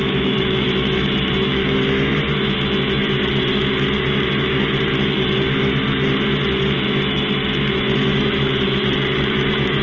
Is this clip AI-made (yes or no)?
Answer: yes